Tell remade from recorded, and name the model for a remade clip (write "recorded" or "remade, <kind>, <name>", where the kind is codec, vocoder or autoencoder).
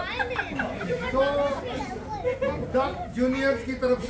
recorded